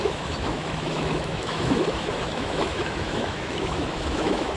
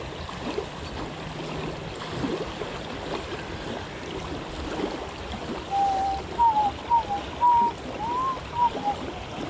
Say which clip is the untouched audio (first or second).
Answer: second